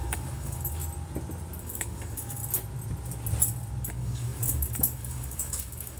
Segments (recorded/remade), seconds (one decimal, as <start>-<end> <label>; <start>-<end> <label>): 0.0-0.8 remade; 0.8-1.6 recorded; 1.6-2.4 remade; 2.4-3.9 recorded; 3.9-6.0 remade